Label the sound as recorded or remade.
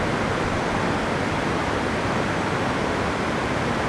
recorded